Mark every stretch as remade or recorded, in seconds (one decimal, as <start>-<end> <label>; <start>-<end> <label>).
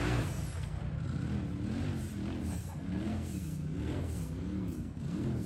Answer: 0.0-0.8 remade; 0.8-2.4 recorded; 2.4-5.5 remade